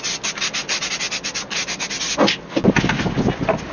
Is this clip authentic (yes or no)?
yes